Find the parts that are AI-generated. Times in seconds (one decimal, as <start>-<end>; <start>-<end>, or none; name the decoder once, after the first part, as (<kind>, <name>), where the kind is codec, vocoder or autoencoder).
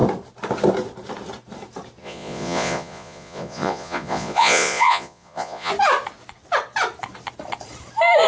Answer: 2.0-5.7 (vocoder, Vocos)